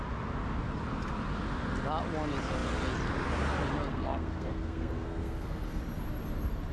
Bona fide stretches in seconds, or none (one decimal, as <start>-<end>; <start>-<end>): 0.0-3.9; 5.8-6.7